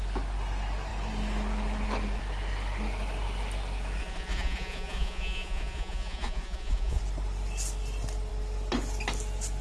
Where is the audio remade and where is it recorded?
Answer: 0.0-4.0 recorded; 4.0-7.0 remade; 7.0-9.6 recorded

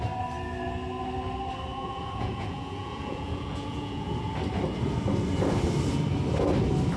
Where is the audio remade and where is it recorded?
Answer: 0.0-1.7 recorded; 1.7-4.3 remade; 4.3-7.0 recorded

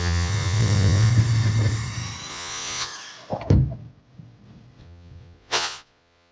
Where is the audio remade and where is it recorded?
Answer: 0.0-1.1 remade; 1.1-2.3 recorded; 2.3-2.9 remade; 2.9-4.8 recorded; 4.8-6.3 remade

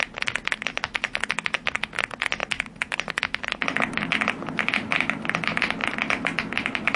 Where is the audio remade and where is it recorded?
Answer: 0.0-7.0 recorded

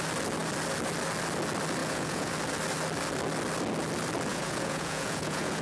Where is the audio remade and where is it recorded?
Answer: 0.0-1.8 recorded; 1.8-2.3 remade; 2.3-4.3 recorded; 4.3-5.6 remade

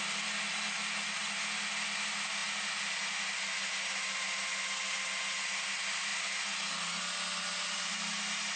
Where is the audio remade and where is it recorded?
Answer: 0.0-8.6 recorded

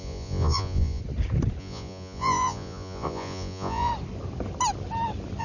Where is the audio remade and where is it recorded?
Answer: 0.0-1.0 remade; 1.0-1.6 recorded; 1.6-3.9 remade; 3.9-5.4 recorded

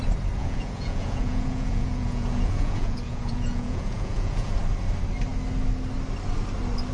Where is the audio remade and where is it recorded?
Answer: 0.0-0.4 recorded; 0.4-4.5 remade; 4.5-6.9 recorded